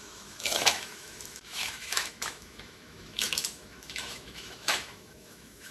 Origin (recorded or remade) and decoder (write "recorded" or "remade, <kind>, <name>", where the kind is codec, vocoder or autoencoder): remade, autoencoder, DAC-VAE